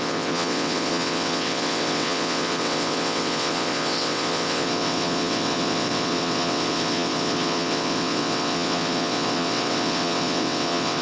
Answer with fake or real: fake